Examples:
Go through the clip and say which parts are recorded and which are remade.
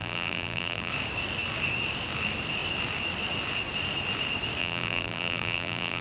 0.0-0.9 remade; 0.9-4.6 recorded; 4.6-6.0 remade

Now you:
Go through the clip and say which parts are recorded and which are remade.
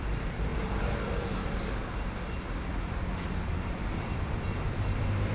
0.0-5.3 remade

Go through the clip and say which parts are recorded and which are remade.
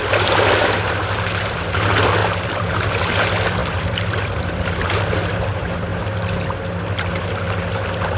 0.0-5.9 remade; 5.9-8.2 recorded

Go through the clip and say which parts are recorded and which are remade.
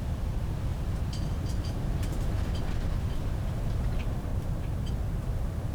0.0-0.7 recorded; 0.7-2.6 remade; 2.6-4.3 recorded; 4.3-4.9 remade; 4.9-5.7 recorded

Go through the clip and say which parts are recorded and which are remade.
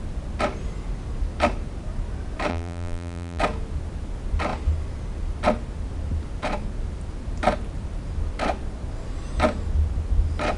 0.0-2.5 recorded; 2.5-3.4 remade; 3.4-10.6 recorded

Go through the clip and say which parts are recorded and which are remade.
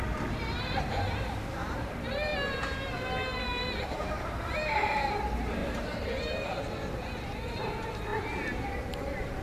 0.0-9.4 remade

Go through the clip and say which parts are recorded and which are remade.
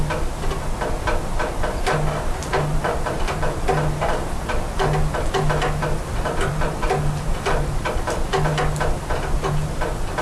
0.0-2.4 recorded; 2.4-3.6 remade; 3.6-6.1 recorded; 6.1-7.9 remade; 7.9-10.2 recorded